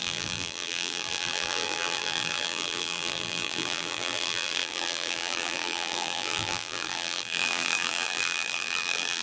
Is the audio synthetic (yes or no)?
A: yes